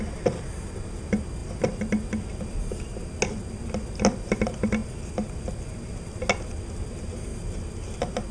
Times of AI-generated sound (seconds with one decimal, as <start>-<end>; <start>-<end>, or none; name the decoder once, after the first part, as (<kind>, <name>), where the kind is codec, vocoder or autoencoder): none

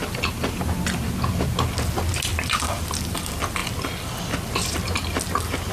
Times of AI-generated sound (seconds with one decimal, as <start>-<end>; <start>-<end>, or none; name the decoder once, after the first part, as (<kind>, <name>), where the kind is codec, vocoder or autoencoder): 0.0-1.0 (vocoder, BigVGAN v2); 2.3-3.2

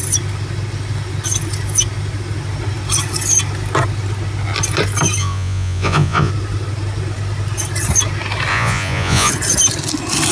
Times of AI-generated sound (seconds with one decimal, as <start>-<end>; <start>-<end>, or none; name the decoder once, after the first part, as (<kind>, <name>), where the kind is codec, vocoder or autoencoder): 5.2-6.3 (vocoder, Vocos); 8.5-9.3

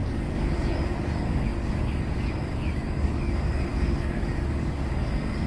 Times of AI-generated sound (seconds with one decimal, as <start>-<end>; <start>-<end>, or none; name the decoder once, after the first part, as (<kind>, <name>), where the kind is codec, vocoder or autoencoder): 0.0-5.5 (codec, DAC)

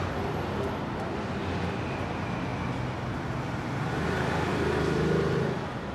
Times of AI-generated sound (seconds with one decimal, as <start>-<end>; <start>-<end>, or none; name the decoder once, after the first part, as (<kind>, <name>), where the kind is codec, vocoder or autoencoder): none